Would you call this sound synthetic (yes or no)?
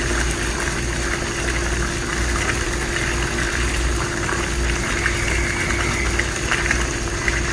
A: no